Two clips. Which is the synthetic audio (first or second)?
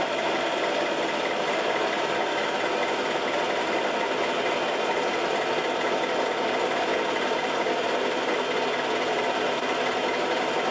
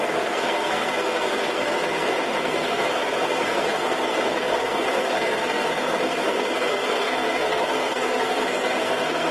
second